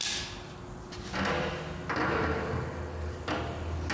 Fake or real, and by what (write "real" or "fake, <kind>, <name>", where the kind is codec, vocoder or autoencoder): real